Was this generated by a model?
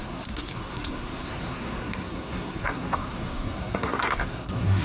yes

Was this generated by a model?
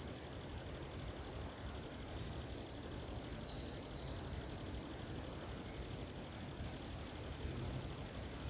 no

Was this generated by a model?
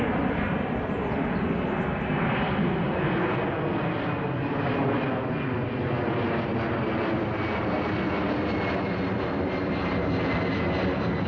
no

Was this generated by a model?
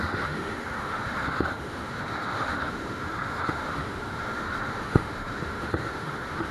yes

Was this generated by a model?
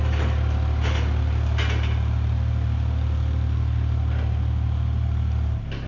no